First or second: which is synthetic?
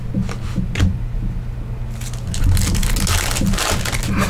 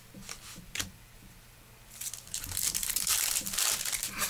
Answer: second